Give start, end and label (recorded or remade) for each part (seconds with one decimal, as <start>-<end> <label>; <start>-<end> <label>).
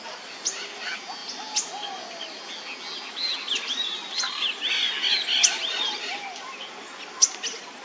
0.0-7.8 recorded